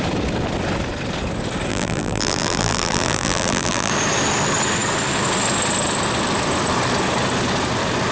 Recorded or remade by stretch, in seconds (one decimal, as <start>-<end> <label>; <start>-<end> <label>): 0.0-1.7 recorded; 1.7-3.9 remade; 3.9-8.1 recorded